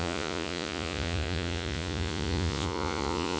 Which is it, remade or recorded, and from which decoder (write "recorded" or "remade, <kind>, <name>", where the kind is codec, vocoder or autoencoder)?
remade, vocoder, Vocos